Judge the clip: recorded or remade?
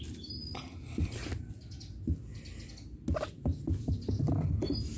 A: recorded